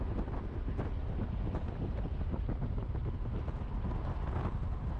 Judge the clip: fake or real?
real